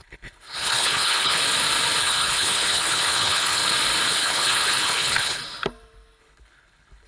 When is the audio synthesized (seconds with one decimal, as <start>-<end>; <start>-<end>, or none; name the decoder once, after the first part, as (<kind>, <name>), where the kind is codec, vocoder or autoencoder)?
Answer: 0.0-1.4 (codec, HILCodec); 2.0-3.6; 4.1-5.4; 6.2-7.1